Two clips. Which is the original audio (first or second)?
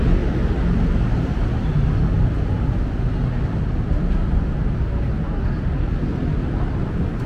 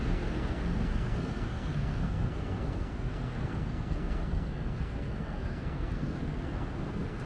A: first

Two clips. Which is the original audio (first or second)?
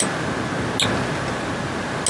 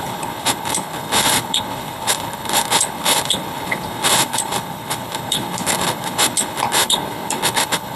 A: first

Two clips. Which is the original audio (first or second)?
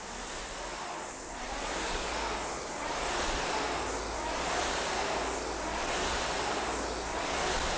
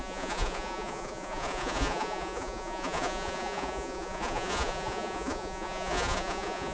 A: first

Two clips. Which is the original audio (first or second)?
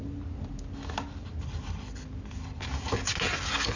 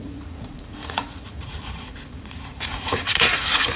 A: first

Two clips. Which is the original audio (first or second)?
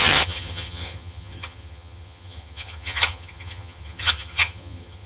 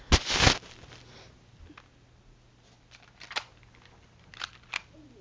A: second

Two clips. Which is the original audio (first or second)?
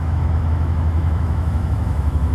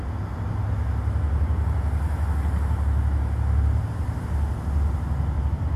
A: second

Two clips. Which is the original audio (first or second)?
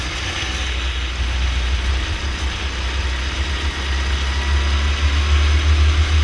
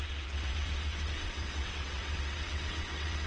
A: first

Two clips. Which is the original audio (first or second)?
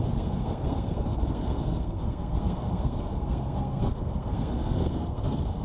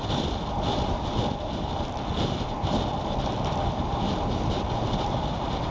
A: second